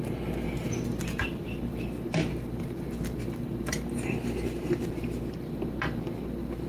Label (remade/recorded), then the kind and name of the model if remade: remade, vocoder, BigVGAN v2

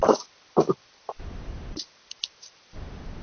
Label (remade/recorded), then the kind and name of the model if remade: recorded